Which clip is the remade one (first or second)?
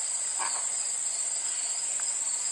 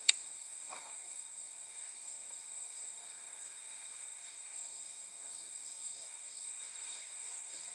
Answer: second